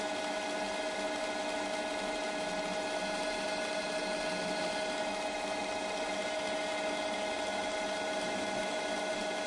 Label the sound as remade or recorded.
recorded